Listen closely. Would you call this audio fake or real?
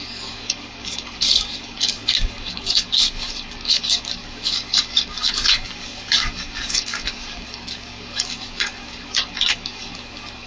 fake